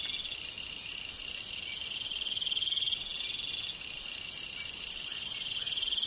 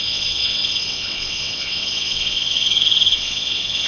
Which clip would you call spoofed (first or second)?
second